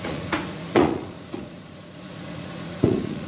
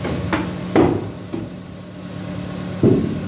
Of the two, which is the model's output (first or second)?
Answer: first